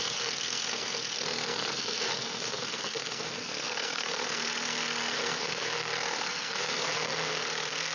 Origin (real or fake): fake